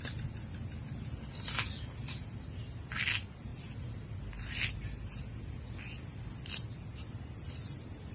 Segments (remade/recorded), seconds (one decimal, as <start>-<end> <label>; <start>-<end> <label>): 0.0-8.1 recorded